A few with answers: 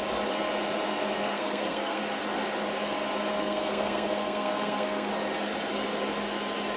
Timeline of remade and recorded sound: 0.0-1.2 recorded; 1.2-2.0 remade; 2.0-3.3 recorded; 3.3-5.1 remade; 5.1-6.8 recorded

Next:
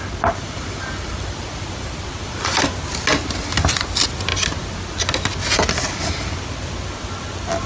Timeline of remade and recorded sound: 0.0-2.8 remade; 2.8-7.7 recorded